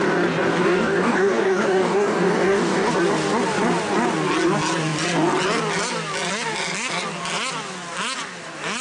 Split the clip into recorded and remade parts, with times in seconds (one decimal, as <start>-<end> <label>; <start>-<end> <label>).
0.0-0.5 recorded; 0.5-2.9 remade; 2.9-8.8 recorded